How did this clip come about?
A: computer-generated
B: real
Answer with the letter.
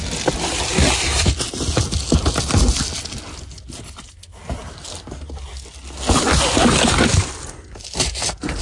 B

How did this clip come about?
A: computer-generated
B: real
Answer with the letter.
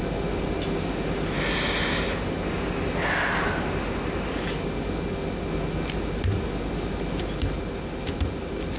B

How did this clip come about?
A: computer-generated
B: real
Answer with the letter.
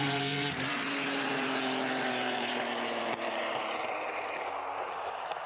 A